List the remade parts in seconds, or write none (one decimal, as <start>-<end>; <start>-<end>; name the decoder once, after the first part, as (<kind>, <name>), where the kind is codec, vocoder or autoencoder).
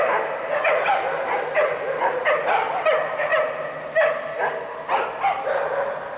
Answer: none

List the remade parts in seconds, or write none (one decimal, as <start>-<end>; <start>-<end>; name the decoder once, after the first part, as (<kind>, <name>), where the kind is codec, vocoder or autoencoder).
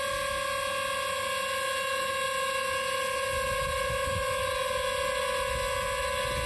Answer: none